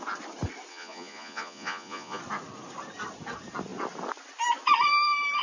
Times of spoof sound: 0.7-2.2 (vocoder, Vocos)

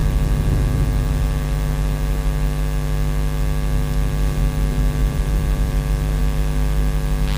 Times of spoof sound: 5.0-6.2 (vocoder, BigVGAN v2)